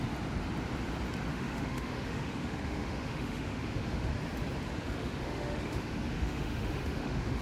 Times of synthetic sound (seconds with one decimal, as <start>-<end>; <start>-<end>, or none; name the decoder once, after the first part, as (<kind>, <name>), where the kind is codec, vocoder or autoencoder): 1.3-4.1 (autoencoder, DAC-VAE); 4.8-7.4

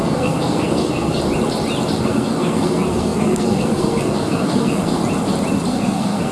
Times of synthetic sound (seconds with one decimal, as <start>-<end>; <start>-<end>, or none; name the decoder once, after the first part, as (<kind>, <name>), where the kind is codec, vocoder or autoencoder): 0.0-1.2 (codec, SNAC); 2.0-5.0; 5.7-6.3

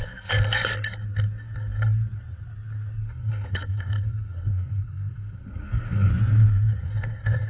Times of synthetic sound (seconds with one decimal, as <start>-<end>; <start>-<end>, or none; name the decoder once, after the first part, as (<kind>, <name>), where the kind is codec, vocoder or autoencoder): 3.0-6.1 (codec, SNAC)

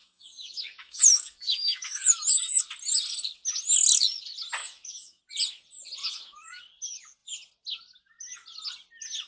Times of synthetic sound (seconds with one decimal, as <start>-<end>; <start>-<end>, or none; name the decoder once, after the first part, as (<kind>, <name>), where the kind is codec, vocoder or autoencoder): 0.0-2.6 (autoencoder, DAC-VAE); 4.6-5.2; 6.0-6.6